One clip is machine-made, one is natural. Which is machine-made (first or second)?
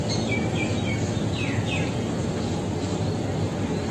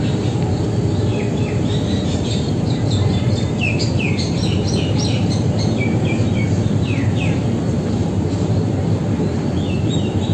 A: second